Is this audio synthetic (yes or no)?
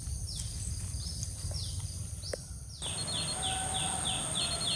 no